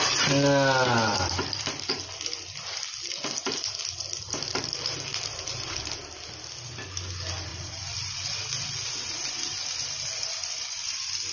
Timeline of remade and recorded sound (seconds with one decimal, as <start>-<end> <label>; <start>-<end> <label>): 0.0-1.1 recorded; 1.1-1.9 remade; 1.9-7.5 recorded; 7.5-11.3 remade